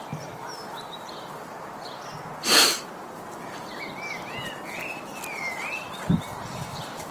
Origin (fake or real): real